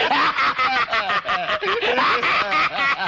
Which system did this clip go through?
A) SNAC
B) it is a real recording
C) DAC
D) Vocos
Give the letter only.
B